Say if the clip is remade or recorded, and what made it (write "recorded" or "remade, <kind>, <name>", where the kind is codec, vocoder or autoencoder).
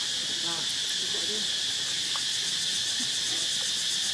recorded